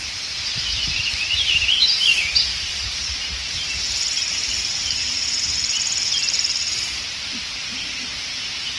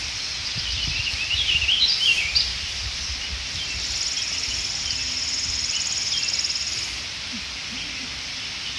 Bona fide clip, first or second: second